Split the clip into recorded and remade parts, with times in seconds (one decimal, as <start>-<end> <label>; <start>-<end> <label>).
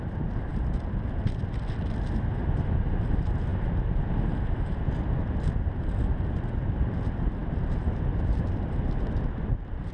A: 0.0-9.9 recorded